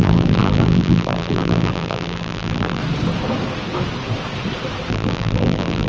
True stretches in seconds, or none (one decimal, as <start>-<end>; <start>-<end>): 2.8-4.9